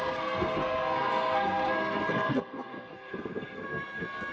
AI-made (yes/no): yes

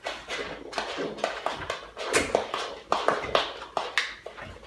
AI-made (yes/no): no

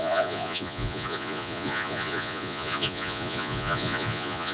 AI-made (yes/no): yes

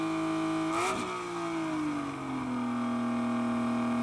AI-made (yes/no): no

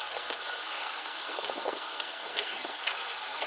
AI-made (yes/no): yes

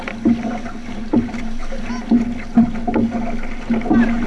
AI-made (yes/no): no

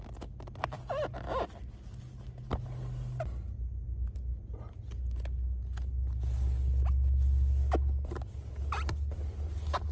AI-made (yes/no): no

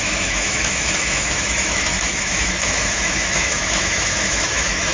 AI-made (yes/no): yes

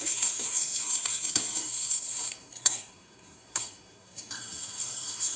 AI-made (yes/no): yes